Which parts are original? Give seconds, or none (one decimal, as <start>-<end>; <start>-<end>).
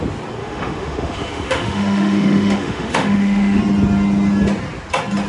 0.0-0.4; 3.6-5.3